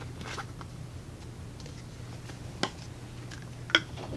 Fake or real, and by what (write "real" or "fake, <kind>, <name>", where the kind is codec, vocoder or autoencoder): real